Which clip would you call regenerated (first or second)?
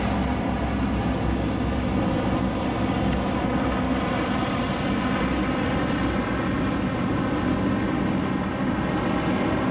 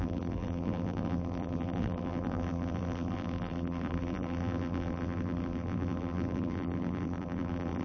second